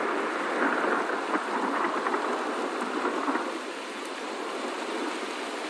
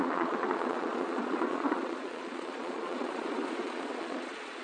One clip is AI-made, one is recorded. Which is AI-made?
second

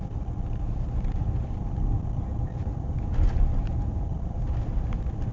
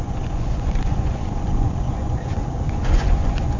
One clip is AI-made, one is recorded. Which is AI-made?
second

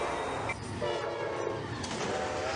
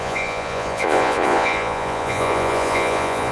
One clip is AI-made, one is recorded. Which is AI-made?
second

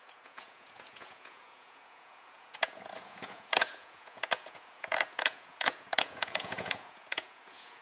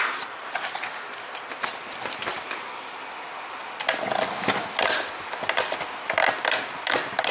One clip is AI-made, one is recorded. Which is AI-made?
first